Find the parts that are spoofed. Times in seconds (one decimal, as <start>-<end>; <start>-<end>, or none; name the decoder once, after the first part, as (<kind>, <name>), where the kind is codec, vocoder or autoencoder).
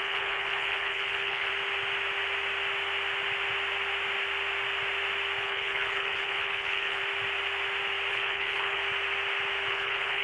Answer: 0.0-1.5 (codec, HILCodec); 5.4-7.0; 8.1-8.8; 9.7-10.2